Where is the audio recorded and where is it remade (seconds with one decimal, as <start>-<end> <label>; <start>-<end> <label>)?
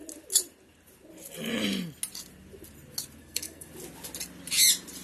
0.0-3.2 recorded; 3.2-3.7 remade; 3.7-5.0 recorded